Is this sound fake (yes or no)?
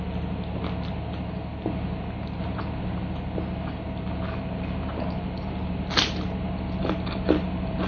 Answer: no